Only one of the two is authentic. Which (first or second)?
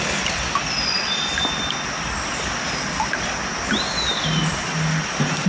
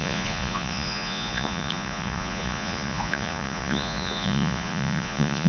first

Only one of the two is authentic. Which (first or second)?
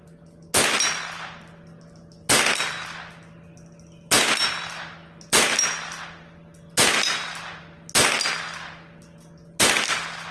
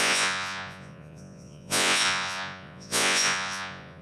first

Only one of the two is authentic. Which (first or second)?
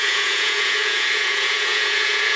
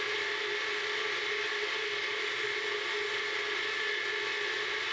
second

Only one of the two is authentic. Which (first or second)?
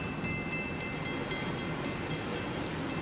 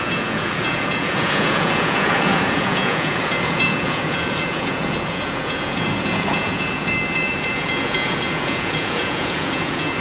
first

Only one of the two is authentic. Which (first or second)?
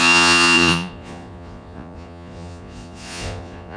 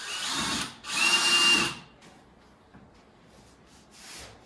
second